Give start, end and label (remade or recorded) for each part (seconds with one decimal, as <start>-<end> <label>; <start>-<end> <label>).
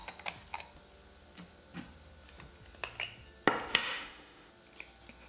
0.0-3.7 recorded; 3.7-4.5 remade; 4.5-5.3 recorded